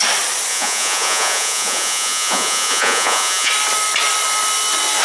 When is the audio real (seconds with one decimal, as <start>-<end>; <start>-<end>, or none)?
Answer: 0.0-0.5; 3.5-5.0